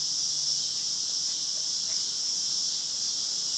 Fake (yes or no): no